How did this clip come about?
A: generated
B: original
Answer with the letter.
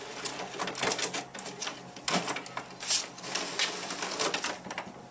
B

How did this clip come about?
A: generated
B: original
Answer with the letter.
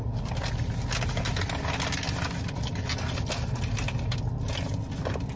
B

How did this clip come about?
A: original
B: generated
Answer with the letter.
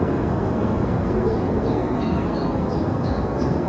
B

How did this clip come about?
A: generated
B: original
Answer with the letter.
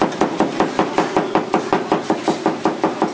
B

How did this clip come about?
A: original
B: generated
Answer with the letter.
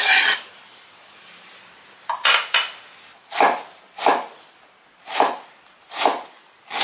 A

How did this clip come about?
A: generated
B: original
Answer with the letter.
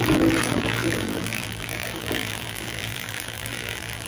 A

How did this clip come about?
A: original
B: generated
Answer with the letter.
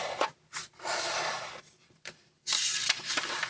B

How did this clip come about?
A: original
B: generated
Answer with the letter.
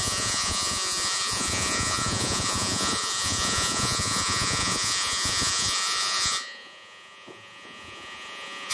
B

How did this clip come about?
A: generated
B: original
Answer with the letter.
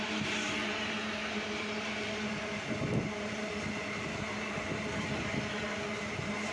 B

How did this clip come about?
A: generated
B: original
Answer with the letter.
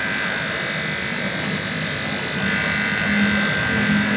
B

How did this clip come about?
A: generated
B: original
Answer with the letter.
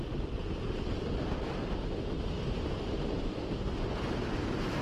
B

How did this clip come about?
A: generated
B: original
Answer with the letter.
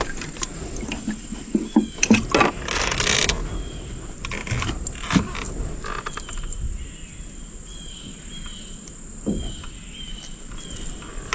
B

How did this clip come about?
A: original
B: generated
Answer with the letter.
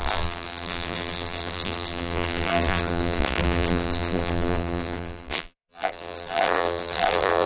B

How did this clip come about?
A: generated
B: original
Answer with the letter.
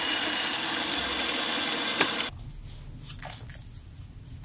B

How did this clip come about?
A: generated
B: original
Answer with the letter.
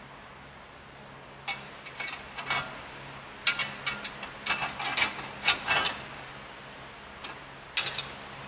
B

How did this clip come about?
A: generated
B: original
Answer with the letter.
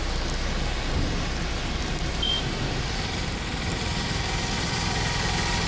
B